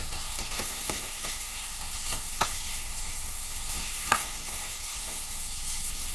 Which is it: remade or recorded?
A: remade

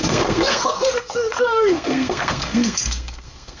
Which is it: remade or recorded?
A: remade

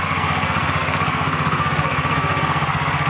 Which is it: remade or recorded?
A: remade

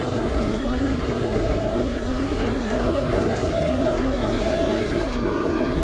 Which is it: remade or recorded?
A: remade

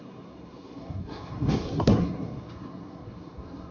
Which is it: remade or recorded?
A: remade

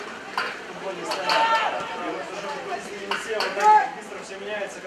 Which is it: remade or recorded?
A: recorded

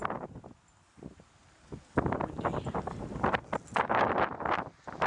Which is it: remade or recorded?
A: recorded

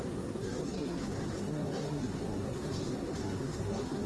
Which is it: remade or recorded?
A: remade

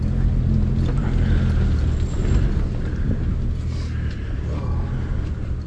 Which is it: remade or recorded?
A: recorded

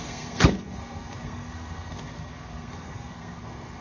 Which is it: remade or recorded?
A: remade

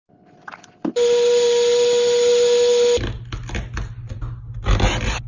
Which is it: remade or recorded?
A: recorded